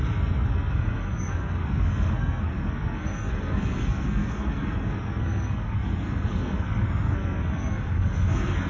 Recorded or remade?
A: remade